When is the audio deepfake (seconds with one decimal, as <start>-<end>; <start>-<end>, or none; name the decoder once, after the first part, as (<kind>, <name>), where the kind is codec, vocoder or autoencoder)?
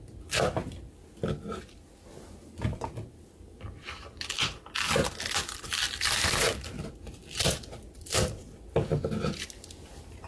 0.6-1.6 (vocoder, BigVGAN v2); 5.4-6.9